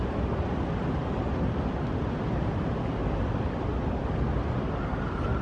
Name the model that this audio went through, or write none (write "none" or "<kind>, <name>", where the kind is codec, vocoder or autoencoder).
none